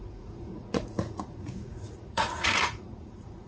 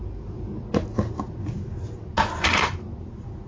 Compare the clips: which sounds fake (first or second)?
first